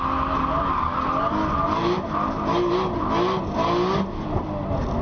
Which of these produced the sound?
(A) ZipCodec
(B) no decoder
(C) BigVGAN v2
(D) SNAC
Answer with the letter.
B